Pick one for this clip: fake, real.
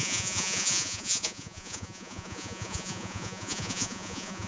fake